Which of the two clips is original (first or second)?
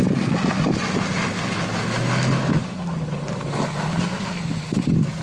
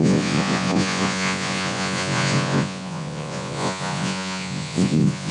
first